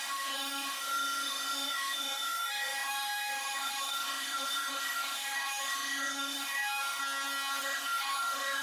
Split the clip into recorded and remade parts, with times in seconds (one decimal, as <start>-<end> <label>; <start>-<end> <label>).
0.0-7.0 remade; 7.0-7.6 recorded; 7.6-8.6 remade